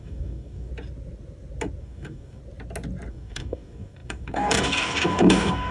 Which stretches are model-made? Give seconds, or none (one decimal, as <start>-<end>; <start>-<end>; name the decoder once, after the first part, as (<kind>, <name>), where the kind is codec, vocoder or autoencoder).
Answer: 0.0-0.7 (codec, DAC); 1.8-2.4; 3.1-5.7